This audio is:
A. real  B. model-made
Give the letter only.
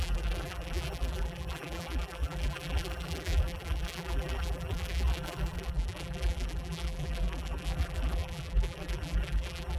B